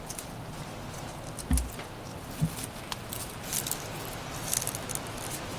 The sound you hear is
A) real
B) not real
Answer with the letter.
A